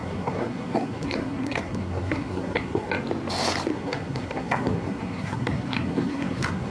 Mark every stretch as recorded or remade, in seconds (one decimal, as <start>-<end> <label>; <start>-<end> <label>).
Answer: 0.0-2.9 remade; 2.9-3.7 recorded; 3.7-6.7 remade